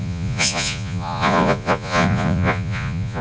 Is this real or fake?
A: fake